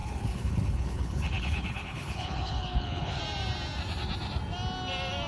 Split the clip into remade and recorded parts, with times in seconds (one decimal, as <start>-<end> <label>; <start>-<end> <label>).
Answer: 0.0-3.2 remade; 3.2-5.3 recorded